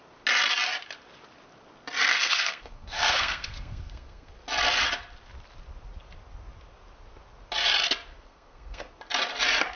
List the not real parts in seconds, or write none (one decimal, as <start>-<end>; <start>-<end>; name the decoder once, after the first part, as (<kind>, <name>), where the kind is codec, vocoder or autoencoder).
2.1-4.3 (codec, SNAC); 8.1-8.9